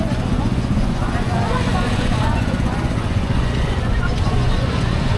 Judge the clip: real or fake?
fake